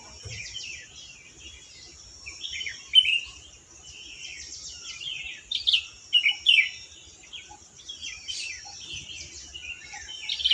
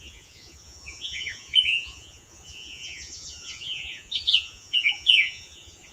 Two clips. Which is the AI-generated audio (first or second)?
second